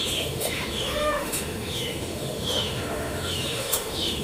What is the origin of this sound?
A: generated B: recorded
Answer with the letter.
A